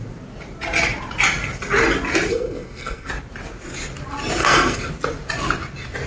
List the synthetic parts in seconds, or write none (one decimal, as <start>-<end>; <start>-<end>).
2.3-3.1; 4.4-4.9